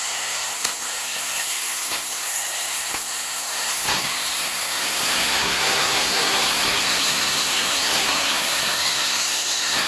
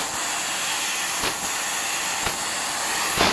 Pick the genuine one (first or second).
second